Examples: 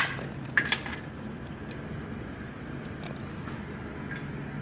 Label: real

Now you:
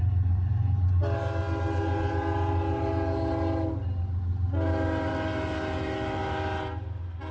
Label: real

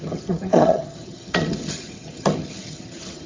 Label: fake